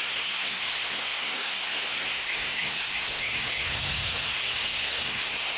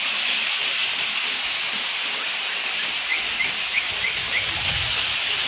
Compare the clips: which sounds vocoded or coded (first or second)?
first